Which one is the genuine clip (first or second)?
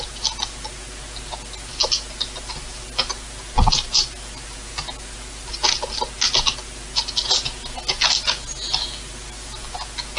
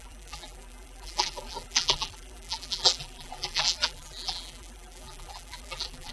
first